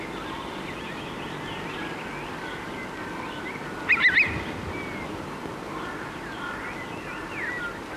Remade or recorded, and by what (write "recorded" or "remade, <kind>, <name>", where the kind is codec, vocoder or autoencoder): recorded